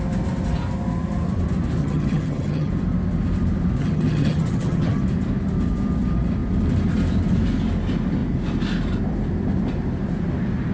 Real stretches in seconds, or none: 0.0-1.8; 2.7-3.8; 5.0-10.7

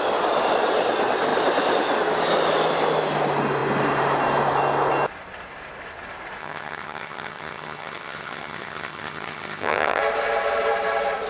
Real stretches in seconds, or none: 0.0-6.4; 10.0-11.3

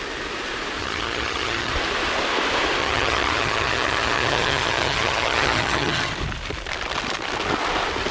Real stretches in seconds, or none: 0.0-0.8; 1.7-2.8; 6.1-8.1

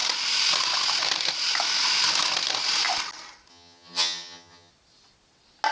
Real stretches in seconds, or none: 0.0-3.5; 4.7-5.7

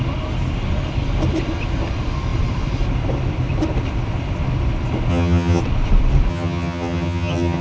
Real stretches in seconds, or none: 0.0-5.1; 5.6-6.3

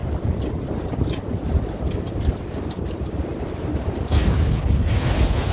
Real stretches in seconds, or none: 0.0-5.5